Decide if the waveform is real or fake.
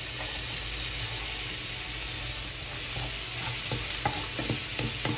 real